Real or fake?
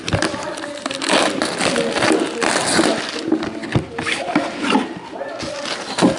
real